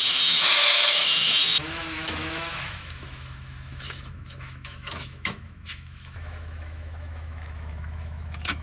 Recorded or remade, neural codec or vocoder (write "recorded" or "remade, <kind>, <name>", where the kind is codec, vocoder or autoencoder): remade, autoencoder, DAC-VAE